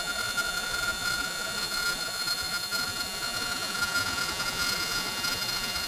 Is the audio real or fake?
fake